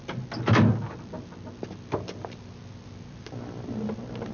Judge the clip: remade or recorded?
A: recorded